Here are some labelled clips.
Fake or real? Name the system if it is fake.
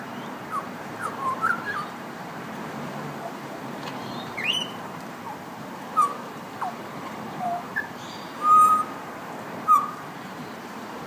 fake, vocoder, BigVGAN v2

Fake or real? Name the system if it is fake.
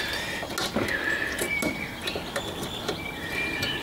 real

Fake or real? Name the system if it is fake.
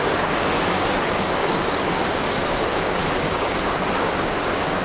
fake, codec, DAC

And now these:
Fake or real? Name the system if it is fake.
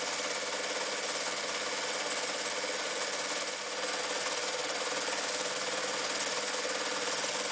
real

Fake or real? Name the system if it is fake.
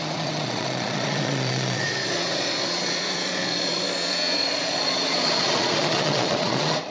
fake, vocoder, Vocos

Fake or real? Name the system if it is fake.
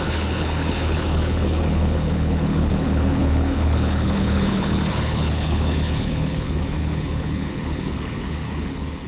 fake, codec, HILCodec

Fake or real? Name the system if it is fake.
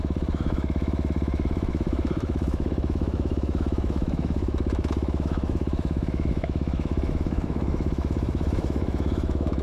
fake, autoencoder, DAC-VAE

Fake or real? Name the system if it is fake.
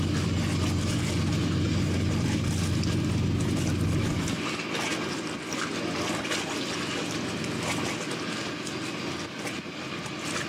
real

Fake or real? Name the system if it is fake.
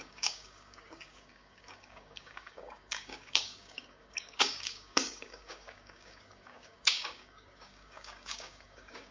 fake, codec, DAC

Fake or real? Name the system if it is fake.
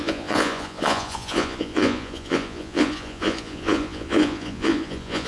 fake, vocoder, Vocos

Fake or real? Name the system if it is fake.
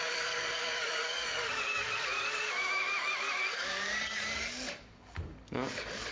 fake, codec, DAC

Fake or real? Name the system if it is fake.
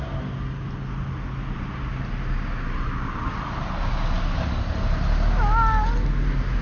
real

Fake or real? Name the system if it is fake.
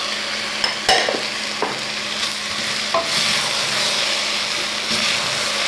real